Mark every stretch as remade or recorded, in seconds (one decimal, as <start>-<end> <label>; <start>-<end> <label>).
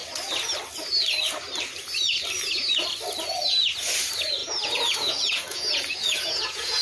0.0-4.4 recorded; 4.4-6.8 remade